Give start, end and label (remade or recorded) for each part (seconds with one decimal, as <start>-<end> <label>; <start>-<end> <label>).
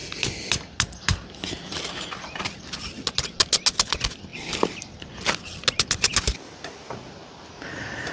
0.0-8.1 recorded